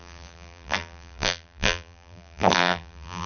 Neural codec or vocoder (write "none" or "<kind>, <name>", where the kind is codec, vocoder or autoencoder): vocoder, BigVGAN v2